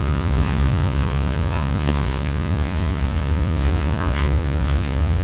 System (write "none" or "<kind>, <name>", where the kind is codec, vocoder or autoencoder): vocoder, Vocos